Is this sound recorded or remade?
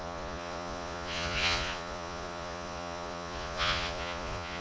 remade